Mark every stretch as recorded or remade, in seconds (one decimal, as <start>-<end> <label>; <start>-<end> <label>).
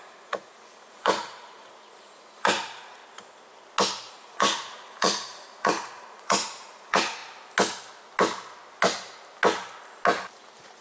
0.0-3.0 remade; 3.0-4.1 recorded; 4.1-7.2 remade; 7.2-10.8 recorded